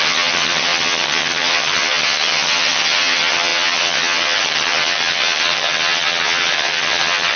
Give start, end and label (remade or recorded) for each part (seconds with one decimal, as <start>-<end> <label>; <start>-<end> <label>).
0.0-7.4 remade